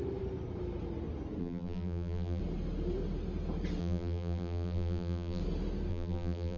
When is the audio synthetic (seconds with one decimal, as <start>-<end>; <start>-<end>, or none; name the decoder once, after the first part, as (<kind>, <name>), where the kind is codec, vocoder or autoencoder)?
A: 1.4-2.4 (vocoder, BigVGAN v2); 3.8-5.4; 5.9-6.6